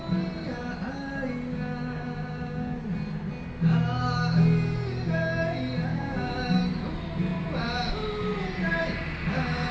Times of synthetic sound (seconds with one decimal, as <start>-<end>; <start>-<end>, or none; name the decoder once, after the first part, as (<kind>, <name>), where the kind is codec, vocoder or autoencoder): 1.5-2.8 (codec, DAC); 5.9-6.6